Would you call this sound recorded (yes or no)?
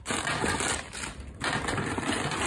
yes